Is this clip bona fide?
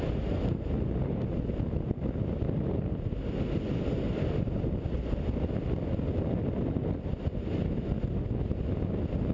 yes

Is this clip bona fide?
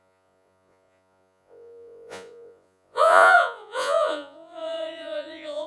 no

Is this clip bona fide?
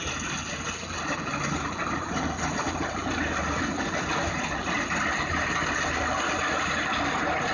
yes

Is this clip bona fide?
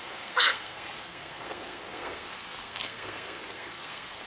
no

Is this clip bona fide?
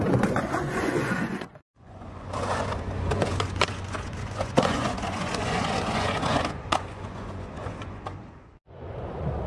no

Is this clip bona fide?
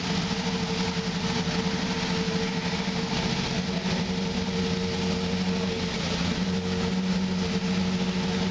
yes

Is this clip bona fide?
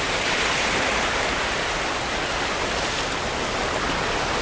yes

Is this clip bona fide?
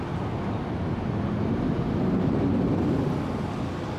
yes